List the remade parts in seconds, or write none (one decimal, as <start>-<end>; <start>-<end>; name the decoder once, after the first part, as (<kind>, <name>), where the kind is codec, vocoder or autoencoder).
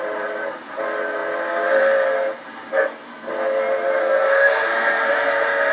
2.7-3.3 (codec, SNAC); 4.0-5.7